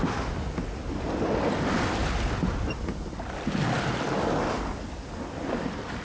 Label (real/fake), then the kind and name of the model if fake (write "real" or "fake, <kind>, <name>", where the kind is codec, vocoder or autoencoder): real